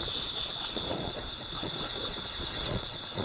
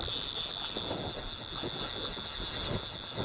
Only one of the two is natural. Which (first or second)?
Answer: second